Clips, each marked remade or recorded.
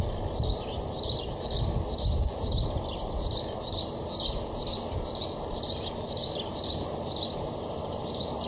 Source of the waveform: recorded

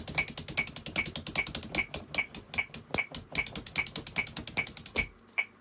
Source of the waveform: recorded